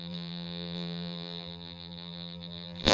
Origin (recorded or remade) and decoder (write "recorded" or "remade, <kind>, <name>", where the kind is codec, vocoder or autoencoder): remade, vocoder, BigVGAN v2